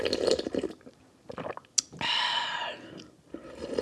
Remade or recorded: recorded